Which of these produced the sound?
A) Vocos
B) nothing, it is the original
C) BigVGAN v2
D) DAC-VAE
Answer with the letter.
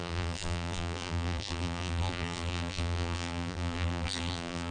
C